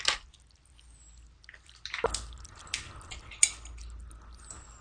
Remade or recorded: recorded